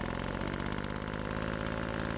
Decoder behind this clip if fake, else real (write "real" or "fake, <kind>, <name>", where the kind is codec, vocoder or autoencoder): real